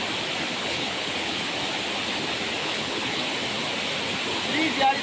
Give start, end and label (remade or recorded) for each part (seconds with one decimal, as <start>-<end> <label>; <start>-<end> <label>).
0.0-0.6 recorded; 0.6-1.3 remade; 1.3-2.6 recorded; 2.6-3.2 remade; 3.2-5.0 recorded